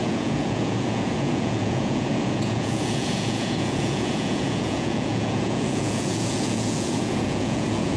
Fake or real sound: fake